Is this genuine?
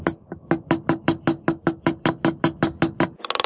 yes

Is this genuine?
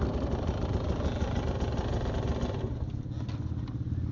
yes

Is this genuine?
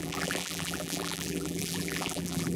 no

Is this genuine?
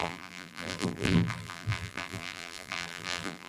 no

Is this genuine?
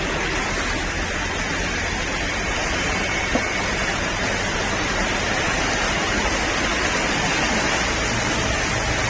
yes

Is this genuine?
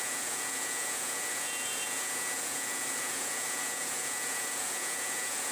no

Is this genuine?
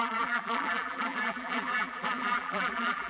no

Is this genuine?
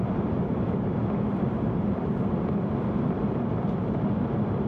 yes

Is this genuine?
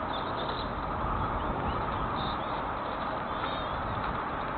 yes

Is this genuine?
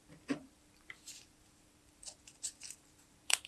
no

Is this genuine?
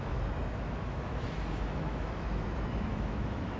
no